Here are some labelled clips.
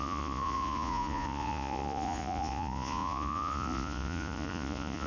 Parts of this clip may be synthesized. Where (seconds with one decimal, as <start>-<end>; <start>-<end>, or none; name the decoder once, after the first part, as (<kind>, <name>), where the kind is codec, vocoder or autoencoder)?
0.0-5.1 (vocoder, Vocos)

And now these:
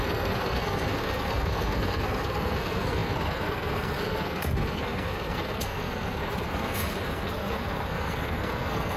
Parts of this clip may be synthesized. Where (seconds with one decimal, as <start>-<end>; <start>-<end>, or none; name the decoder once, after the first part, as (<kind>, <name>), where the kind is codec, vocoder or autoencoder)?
0.0-9.0 (codec, SNAC)

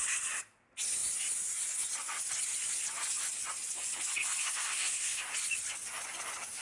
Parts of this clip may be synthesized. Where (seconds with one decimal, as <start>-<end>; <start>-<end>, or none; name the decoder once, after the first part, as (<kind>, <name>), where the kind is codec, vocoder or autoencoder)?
4.4-5.3 (codec, SNAC)

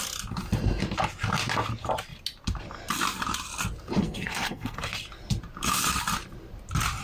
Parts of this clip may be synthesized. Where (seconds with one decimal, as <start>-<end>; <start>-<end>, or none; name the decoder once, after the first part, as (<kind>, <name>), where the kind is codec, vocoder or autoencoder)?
4.0-4.9 (codec, SNAC)

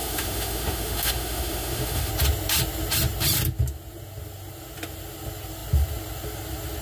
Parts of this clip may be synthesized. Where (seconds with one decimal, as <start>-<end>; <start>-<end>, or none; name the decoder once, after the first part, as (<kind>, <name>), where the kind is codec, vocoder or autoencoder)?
0.0-2.1 (autoencoder, DAC-VAE)

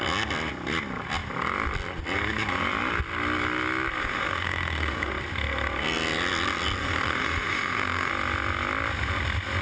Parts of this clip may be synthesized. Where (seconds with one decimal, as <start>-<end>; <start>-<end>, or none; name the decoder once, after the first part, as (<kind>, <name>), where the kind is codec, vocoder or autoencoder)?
4.0-5.1 (autoencoder, DAC-VAE); 6.8-8.1